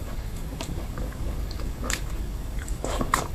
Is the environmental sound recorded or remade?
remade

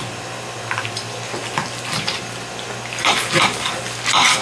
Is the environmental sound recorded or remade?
recorded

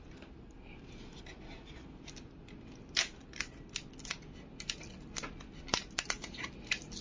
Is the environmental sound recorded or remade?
recorded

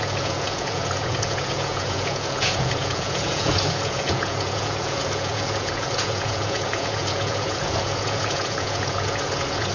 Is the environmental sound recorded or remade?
remade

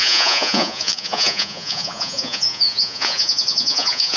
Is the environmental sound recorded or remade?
remade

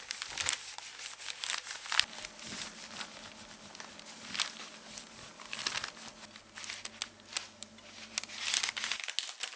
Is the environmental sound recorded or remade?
recorded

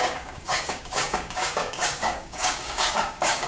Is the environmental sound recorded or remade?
remade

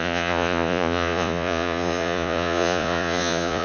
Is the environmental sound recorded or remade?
remade